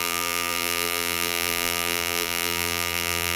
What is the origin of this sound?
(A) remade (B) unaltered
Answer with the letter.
A